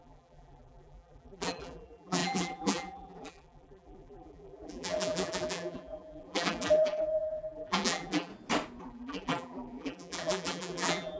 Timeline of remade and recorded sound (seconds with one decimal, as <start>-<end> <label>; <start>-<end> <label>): 0.0-8.3 remade; 8.3-8.8 recorded; 8.8-11.2 remade